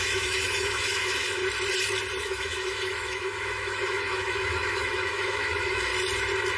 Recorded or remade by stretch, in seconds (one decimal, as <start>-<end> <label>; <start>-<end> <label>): 0.0-1.4 remade; 1.4-2.2 recorded; 2.2-5.9 remade; 5.9-6.6 recorded